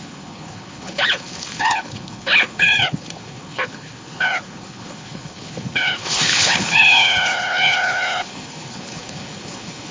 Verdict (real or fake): fake